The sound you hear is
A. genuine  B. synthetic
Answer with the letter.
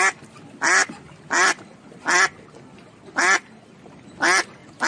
A